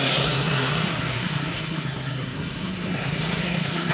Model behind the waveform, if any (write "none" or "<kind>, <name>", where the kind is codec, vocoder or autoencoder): codec, SNAC